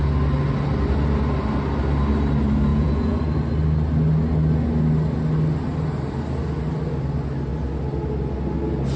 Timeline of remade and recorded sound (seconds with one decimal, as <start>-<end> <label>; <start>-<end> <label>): 0.0-2.7 recorded; 2.7-3.2 remade; 3.2-9.0 recorded